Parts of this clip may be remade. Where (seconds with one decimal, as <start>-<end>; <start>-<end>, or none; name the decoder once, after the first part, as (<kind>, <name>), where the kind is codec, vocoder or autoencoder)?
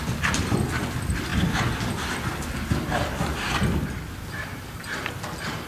none